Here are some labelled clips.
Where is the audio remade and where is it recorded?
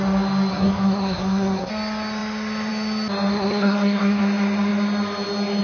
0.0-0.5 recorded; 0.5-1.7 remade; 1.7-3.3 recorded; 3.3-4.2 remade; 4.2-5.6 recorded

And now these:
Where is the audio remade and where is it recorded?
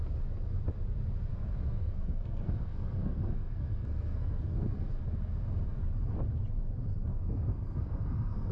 0.0-1.3 recorded; 1.3-4.9 remade; 4.9-7.1 recorded; 7.1-8.5 remade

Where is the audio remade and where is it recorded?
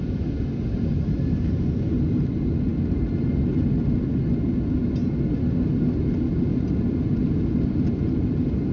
0.0-8.7 recorded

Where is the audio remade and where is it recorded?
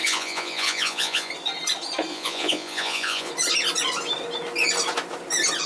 0.0-1.3 remade; 1.3-2.1 recorded; 2.1-3.3 remade; 3.3-5.7 recorded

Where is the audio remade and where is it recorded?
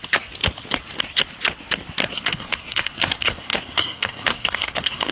0.0-2.0 recorded; 2.0-5.1 remade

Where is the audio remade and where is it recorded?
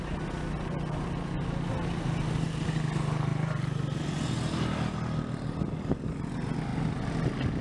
0.0-7.6 recorded